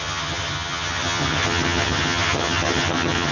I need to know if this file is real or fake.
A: fake